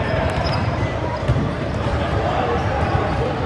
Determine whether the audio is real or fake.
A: fake